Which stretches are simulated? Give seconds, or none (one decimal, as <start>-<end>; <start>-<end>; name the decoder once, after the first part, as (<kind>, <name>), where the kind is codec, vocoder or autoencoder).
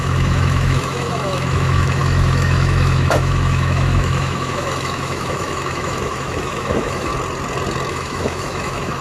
0.0-7.1 (autoencoder, DAC-VAE); 7.9-9.0